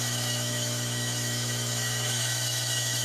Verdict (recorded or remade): remade